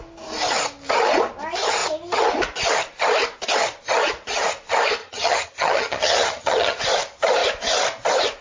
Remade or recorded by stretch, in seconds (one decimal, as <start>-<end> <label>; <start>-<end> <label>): 0.0-5.0 recorded; 5.0-6.8 remade; 6.8-8.4 recorded